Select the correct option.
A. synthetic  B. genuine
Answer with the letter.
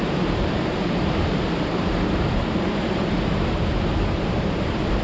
A